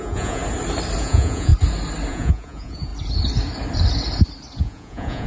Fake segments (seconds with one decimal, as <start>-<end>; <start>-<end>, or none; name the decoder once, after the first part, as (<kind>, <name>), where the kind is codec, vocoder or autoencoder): 0.0-0.4 (vocoder, Vocos); 1.0-1.5; 2.1-2.9; 4.6-5.3

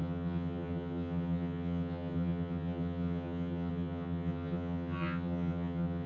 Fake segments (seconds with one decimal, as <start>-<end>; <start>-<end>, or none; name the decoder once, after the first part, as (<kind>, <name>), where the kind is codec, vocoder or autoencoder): 0.0-6.1 (vocoder, HiFi-GAN)

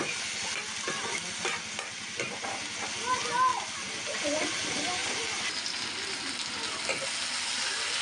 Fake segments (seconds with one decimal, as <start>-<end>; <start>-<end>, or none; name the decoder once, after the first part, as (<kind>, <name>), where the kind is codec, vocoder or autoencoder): none

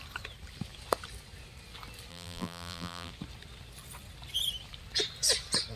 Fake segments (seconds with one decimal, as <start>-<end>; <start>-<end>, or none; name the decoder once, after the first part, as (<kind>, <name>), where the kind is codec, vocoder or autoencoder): 2.1-3.1 (vocoder, BigVGAN v2)

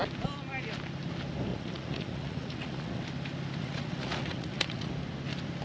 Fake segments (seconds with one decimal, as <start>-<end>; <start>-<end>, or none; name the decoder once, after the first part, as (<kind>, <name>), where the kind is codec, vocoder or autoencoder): 1.5-3.0 (vocoder, Vocos); 3.6-4.9

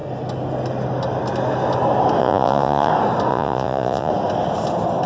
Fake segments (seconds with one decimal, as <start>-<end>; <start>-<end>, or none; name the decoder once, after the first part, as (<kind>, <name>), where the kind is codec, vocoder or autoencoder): 2.2-2.9 (vocoder, Vocos); 3.3-4.1

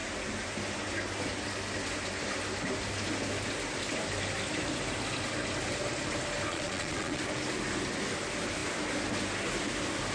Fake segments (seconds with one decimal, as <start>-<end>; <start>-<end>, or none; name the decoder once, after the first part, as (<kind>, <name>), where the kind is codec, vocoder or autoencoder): 6.5-7.2 (vocoder, Vocos)